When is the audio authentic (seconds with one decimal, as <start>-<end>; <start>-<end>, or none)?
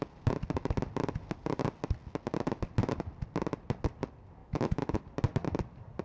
0.0-4.4; 5.0-6.0